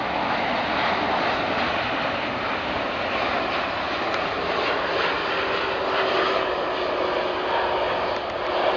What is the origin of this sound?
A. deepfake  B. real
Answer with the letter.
B